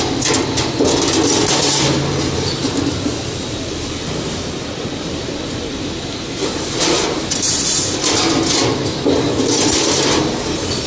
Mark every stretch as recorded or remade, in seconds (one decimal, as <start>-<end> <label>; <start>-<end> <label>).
0.0-2.9 recorded; 2.9-8.0 remade; 8.0-10.9 recorded